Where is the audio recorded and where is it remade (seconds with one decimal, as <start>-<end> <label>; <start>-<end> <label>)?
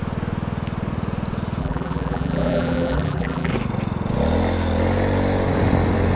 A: 0.0-1.6 recorded; 1.6-3.5 remade; 3.5-6.2 recorded